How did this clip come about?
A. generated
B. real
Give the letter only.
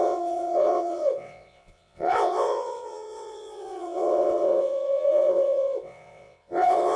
A